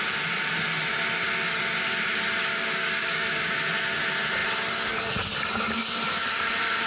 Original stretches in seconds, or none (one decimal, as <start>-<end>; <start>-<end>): 0.0-2.4; 3.6-6.9